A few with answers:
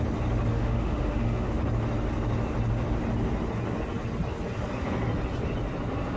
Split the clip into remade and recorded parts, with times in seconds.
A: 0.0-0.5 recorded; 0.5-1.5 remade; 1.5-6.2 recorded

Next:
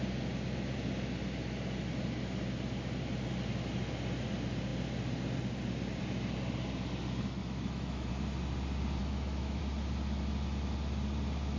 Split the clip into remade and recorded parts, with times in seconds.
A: 0.0-7.4 recorded; 7.4-8.1 remade; 8.1-9.0 recorded; 9.0-9.6 remade; 9.6-11.6 recorded

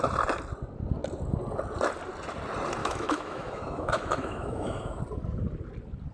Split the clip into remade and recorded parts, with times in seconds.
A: 0.0-2.8 recorded; 2.8-5.0 remade; 5.0-6.1 recorded

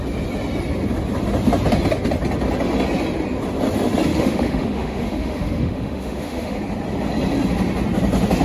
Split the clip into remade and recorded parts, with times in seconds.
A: 0.0-4.1 recorded; 4.1-6.6 remade; 6.6-8.4 recorded

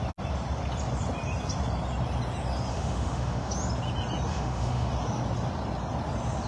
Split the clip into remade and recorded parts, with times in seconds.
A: 0.0-2.7 recorded; 2.7-3.5 remade; 3.5-4.3 recorded; 4.3-4.9 remade; 4.9-6.5 recorded

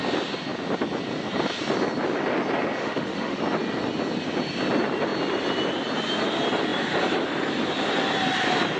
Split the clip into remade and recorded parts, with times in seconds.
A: 0.0-2.8 recorded; 2.8-3.4 remade; 3.4-8.8 recorded

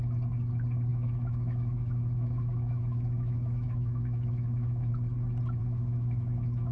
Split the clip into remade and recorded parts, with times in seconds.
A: 0.0-0.9 recorded; 0.9-4.9 remade; 4.9-5.6 recorded; 5.6-6.7 remade

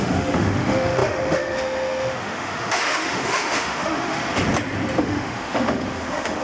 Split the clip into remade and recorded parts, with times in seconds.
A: 0.0-4.2 remade; 4.2-5.0 recorded; 5.0-6.4 remade